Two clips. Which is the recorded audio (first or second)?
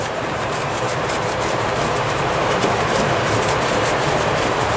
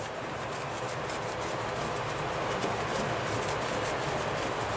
second